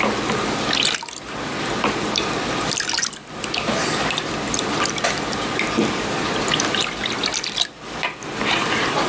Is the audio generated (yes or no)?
no